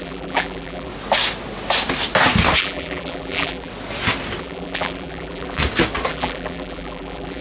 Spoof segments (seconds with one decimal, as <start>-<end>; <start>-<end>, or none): 0.0-0.9; 2.6-3.7; 4.4-5.6; 6.1-7.4